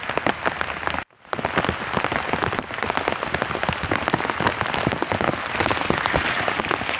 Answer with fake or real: real